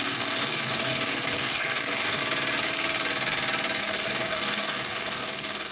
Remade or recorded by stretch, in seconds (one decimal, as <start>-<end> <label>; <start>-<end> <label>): 0.0-2.2 remade; 2.2-3.8 recorded; 3.8-5.7 remade